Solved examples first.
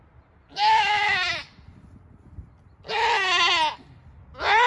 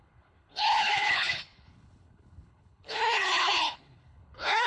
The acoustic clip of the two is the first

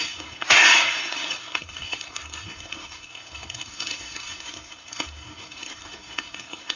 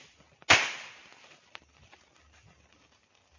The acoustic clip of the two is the second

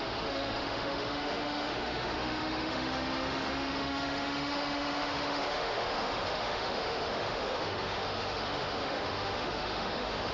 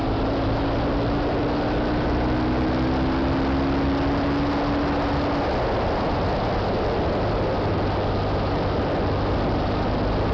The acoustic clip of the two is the second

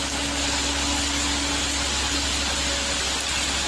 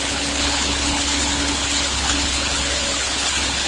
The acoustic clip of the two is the first